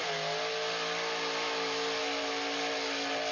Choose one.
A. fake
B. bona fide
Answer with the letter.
B